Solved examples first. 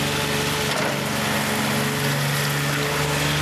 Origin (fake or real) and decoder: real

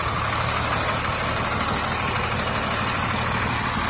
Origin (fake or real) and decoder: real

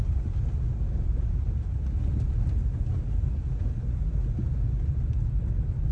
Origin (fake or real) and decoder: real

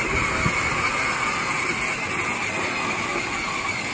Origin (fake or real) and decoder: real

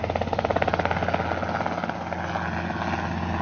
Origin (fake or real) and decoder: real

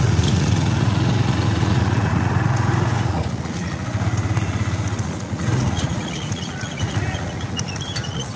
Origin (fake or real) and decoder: fake, vocoder, Vocos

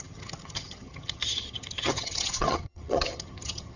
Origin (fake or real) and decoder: fake, vocoder, HiFi-GAN